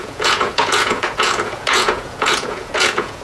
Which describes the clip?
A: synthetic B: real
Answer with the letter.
A